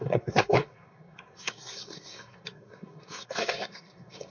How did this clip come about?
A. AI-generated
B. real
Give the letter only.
A